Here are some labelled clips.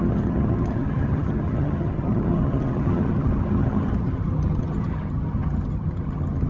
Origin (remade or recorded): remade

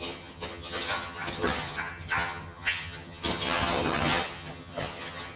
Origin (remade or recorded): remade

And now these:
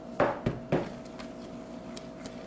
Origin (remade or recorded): recorded